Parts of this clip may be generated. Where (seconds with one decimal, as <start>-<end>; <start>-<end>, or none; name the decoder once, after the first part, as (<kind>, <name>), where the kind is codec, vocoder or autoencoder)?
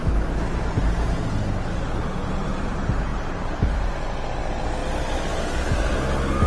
3.1-3.9 (vocoder, BigVGAN v2); 4.8-5.4